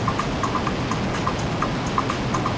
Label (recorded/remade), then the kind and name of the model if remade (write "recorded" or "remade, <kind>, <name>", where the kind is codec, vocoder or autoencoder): recorded